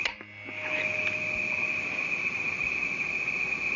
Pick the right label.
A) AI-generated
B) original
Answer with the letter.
B